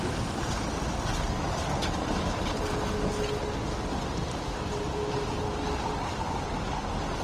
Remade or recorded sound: recorded